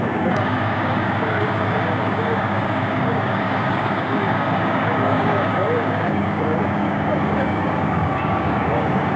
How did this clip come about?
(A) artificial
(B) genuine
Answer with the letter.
A